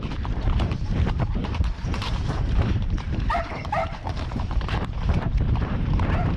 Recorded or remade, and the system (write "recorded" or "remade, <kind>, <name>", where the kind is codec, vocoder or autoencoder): remade, vocoder, BigVGAN v2